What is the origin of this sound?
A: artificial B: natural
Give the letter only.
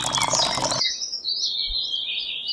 B